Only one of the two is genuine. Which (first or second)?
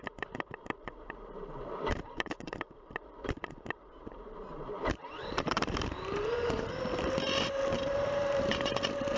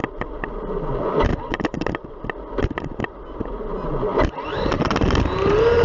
second